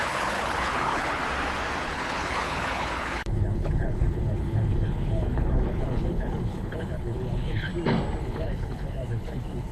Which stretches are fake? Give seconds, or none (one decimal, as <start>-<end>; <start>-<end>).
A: 0.0-1.2; 1.8-7.7; 8.2-9.7